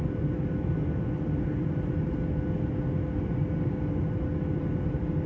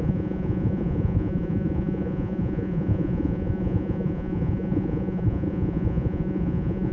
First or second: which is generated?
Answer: second